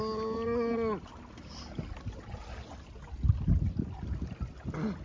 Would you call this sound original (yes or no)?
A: yes